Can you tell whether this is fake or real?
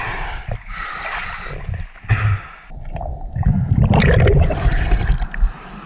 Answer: real